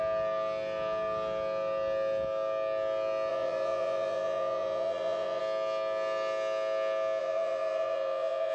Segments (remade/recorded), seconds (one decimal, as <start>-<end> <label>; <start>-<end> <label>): 0.0-3.3 recorded; 3.3-5.4 remade; 5.4-7.2 recorded; 7.2-8.5 remade